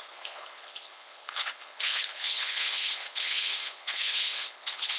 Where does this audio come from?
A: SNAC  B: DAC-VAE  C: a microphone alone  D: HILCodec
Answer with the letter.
D